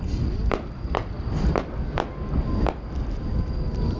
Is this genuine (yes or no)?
yes